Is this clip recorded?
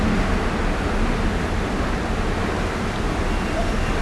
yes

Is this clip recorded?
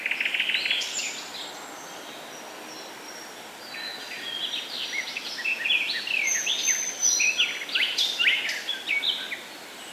yes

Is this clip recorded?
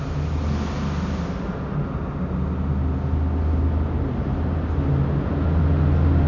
yes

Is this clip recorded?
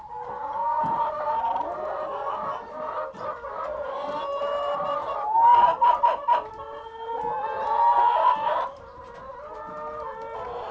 yes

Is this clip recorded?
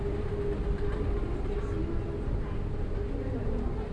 yes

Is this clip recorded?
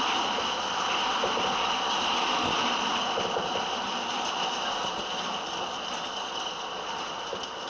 yes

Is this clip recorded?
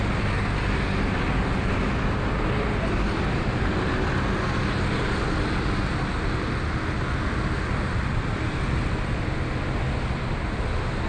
yes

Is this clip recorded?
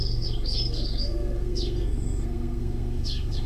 no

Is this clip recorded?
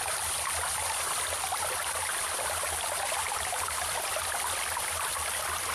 yes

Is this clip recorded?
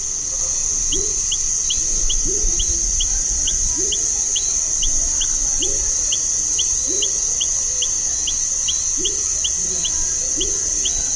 yes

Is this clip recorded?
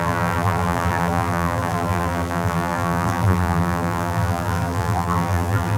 no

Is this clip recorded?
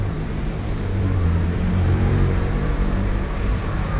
no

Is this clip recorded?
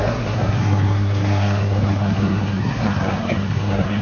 no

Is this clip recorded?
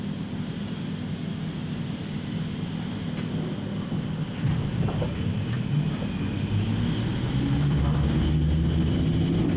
yes